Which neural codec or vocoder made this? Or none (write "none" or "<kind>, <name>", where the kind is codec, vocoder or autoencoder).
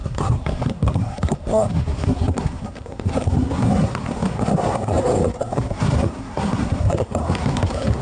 codec, SNAC